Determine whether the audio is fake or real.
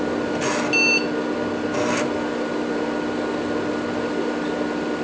real